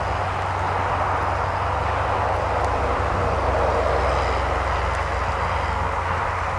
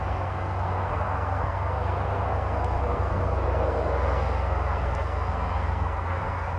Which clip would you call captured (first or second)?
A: first